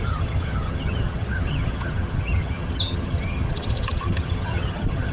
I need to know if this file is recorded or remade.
remade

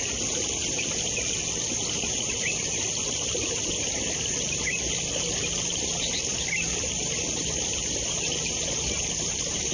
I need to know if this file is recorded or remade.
recorded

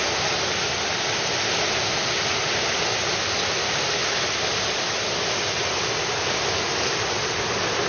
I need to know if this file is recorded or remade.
recorded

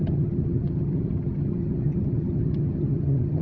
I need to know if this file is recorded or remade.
remade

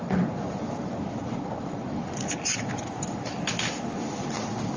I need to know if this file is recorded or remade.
recorded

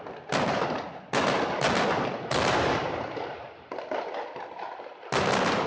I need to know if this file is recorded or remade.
recorded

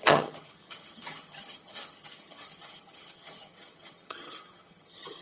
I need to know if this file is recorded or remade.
remade